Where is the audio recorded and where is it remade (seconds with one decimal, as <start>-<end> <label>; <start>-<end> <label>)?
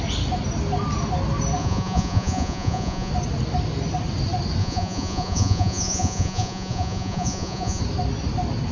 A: 0.0-1.6 recorded; 1.6-3.1 remade; 3.1-4.6 recorded; 4.6-7.8 remade; 7.8-8.7 recorded